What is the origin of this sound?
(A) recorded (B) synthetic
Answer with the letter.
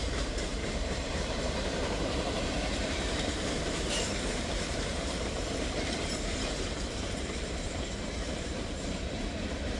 B